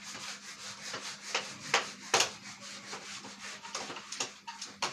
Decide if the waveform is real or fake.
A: real